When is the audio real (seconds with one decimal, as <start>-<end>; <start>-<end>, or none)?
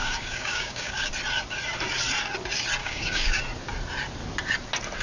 1.1-2.8; 3.4-5.0